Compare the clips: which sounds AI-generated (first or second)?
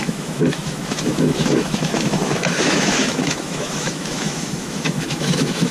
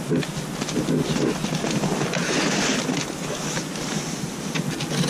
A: first